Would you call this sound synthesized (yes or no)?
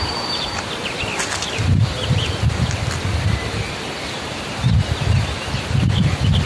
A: no